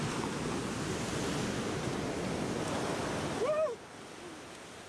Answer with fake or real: real